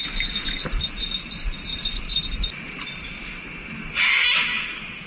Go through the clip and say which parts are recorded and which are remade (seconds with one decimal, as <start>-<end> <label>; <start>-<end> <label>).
0.0-5.1 recorded